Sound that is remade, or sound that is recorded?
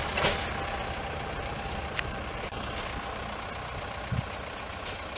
recorded